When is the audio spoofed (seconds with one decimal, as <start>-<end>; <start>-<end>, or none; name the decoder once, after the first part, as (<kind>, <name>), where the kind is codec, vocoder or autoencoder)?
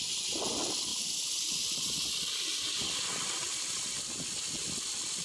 0.9-4.0 (vocoder, BigVGAN v2)